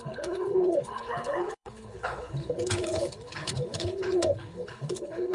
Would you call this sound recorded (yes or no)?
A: no